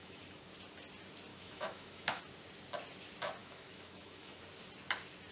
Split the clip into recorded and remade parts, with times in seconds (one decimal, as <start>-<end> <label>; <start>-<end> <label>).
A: 0.0-0.5 remade; 0.5-1.3 recorded; 1.3-2.2 remade; 2.2-3.4 recorded; 3.4-4.4 remade; 4.4-5.3 recorded